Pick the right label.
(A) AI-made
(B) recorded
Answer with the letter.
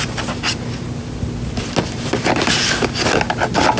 B